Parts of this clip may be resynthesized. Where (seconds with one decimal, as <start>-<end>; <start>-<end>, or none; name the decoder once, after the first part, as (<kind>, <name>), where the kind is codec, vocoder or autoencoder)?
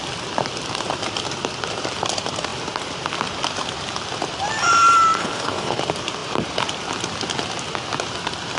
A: 5.2-5.8 (codec, HILCodec)